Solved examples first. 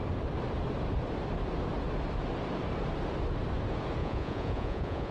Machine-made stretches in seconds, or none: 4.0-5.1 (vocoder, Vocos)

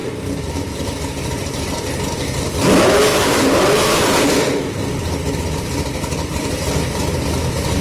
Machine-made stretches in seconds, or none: 0.0-1.7 (vocoder, BigVGAN v2); 3.1-6.6

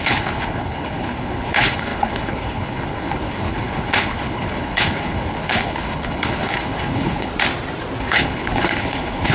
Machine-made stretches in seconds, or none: 0.0-7.3 (codec, HILCodec); 8.0-9.3

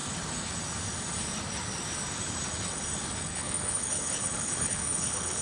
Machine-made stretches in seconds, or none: 3.2-5.4 (codec, HILCodec)

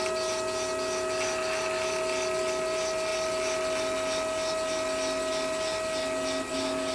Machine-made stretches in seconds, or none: none